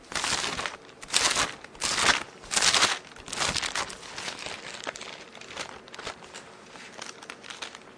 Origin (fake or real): real